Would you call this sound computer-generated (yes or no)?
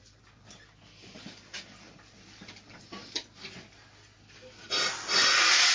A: no